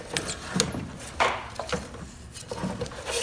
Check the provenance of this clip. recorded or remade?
recorded